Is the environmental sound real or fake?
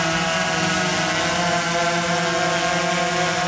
real